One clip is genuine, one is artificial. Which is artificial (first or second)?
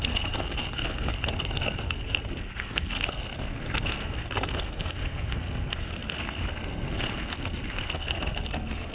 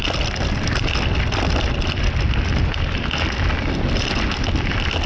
first